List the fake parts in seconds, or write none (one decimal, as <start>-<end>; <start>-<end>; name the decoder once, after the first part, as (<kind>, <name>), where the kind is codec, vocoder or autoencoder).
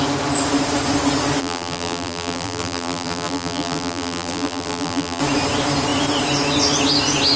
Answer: 1.4-5.2 (vocoder, BigVGAN v2)